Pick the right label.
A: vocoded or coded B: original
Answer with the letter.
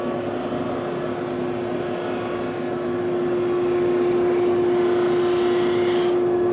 B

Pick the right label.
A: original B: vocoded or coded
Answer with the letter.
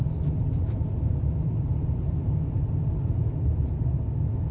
A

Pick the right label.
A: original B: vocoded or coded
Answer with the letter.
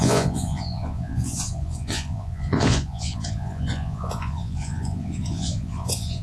B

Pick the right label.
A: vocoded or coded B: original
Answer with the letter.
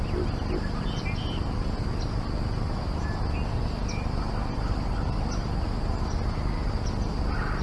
B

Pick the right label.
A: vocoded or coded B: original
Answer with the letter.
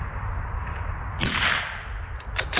B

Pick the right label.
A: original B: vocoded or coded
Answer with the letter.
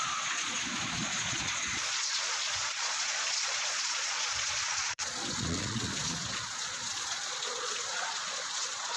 B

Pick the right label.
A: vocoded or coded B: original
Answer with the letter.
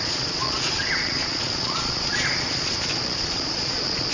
A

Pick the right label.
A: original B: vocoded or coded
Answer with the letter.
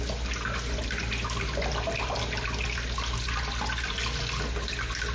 A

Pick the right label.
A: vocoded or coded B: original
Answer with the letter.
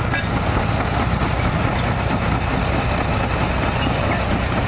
B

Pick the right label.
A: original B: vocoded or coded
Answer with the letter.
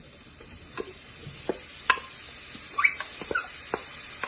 A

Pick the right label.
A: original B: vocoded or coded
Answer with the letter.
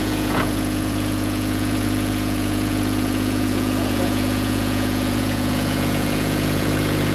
B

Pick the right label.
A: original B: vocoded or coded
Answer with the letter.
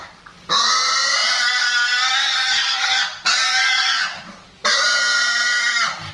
A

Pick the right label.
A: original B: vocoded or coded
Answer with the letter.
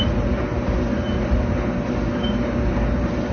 A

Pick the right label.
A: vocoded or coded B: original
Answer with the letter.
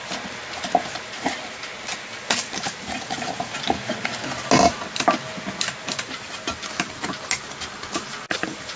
B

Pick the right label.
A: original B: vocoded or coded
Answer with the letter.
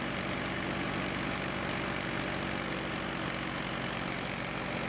A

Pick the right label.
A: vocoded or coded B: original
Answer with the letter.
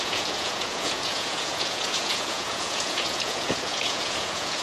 A